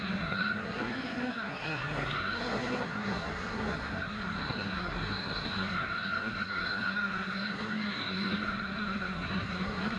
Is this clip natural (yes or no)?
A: no